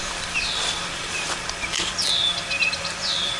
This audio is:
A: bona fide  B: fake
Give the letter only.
B